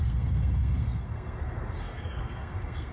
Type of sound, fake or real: fake